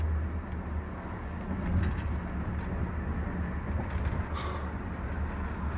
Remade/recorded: recorded